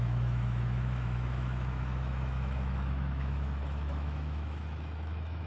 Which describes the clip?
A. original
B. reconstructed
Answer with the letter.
B